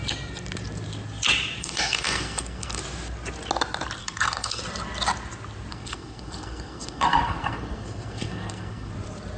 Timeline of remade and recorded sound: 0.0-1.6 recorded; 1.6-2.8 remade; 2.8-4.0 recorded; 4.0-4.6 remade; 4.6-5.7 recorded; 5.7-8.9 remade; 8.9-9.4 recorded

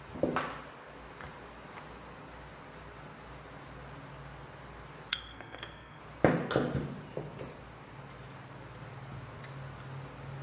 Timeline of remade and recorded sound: 0.0-5.1 recorded; 5.1-6.0 remade; 6.0-10.4 recorded

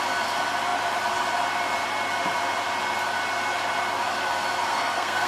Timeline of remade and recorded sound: 0.0-4.7 recorded; 4.7-5.3 remade